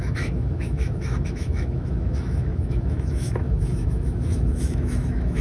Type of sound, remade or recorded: remade